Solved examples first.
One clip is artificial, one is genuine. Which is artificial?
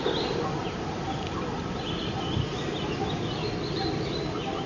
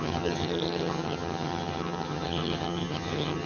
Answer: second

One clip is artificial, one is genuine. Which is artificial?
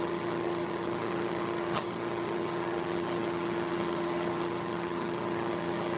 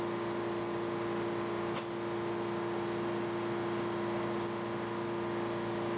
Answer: first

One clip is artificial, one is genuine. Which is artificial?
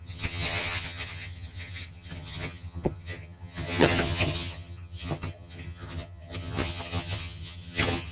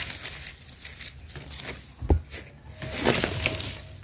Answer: first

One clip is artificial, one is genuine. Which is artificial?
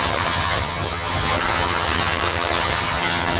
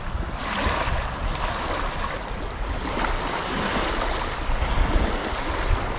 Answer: first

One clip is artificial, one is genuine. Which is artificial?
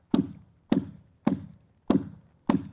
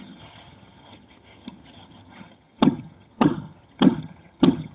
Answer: second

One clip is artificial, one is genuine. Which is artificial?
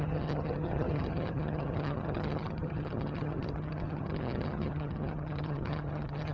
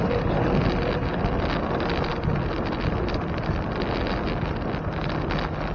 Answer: first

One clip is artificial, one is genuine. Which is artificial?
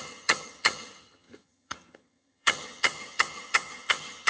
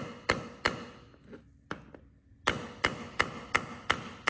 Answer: first